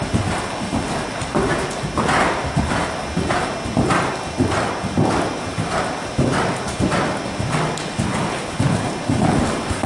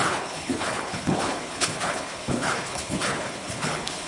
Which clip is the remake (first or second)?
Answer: second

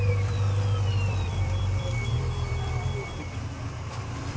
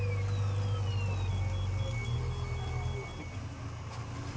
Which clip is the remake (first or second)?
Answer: first